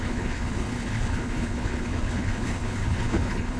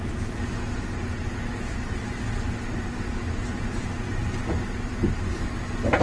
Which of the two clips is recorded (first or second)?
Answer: second